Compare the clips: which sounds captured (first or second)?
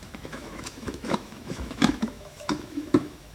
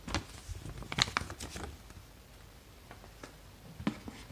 second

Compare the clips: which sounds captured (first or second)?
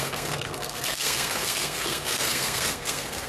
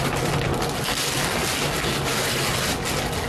second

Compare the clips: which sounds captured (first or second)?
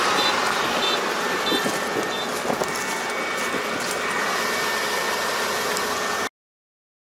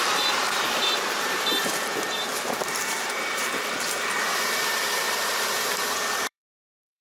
first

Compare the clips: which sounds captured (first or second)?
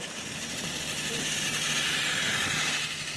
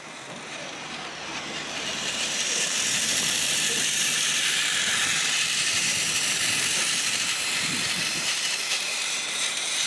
first